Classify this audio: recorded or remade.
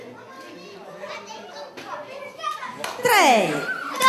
recorded